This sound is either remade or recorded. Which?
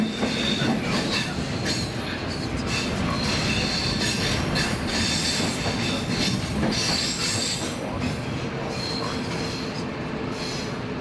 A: recorded